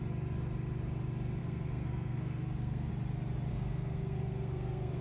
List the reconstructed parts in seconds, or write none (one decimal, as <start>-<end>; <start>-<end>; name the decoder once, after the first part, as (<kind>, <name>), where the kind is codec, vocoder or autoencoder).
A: 1.4-2.9 (codec, SNAC); 3.5-5.0